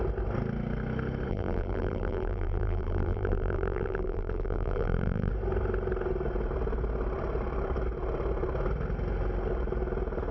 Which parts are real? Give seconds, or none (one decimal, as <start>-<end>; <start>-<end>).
0.0-1.3; 5.3-10.3

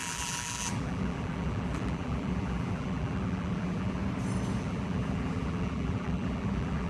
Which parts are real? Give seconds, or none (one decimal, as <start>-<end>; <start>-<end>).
4.0-4.6

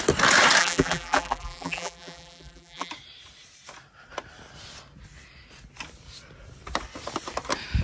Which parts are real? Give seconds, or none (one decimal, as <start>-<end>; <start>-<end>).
0.0-0.6; 2.9-7.8

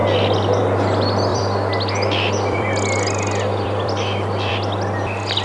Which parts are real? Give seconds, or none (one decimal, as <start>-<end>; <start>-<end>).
0.0-1.3; 4.5-5.4

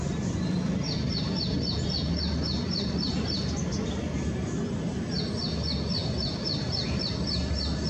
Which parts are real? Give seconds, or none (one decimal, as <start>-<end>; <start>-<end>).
0.0-6.0; 7.0-7.9

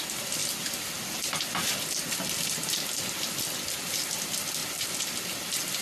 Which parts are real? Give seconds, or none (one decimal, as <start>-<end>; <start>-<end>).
0.0-4.6; 5.1-5.8

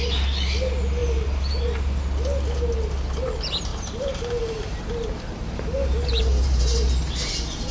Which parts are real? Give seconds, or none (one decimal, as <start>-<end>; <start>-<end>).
0.0-1.0; 1.5-3.7; 4.8-5.4; 6.9-7.7